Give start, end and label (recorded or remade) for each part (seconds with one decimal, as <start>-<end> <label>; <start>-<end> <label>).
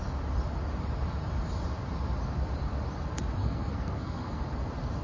0.0-3.4 recorded; 3.4-4.6 remade; 4.6-5.0 recorded